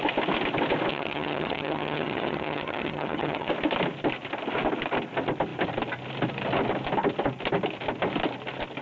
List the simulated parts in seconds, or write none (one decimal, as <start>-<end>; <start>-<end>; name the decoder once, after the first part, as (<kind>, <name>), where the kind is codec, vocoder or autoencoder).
0.9-3.5 (vocoder, HiFi-GAN)